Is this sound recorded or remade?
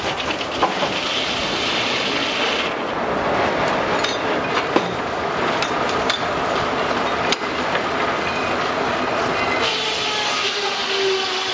recorded